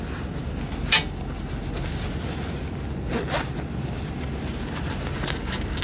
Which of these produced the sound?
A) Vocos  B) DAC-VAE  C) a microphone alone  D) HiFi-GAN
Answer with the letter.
C